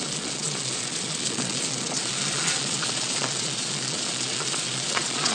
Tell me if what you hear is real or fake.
fake